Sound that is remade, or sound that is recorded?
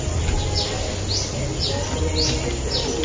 recorded